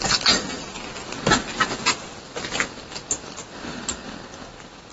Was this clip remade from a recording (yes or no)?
no